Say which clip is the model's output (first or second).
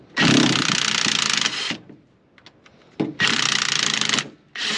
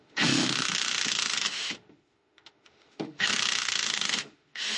second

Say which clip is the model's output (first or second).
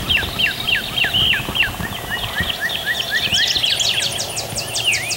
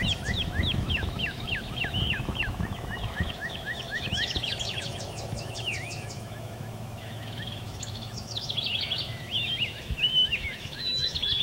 second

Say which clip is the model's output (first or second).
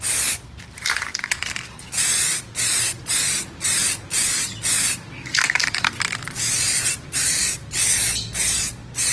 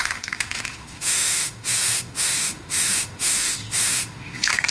second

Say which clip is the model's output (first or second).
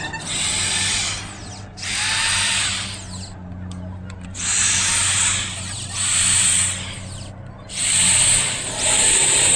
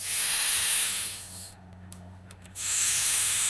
second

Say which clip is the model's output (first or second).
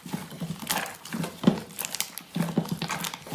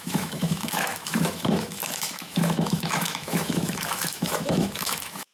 second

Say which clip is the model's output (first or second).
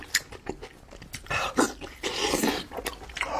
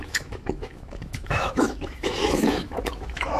second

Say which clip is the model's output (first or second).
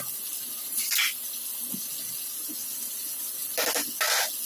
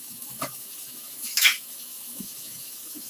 second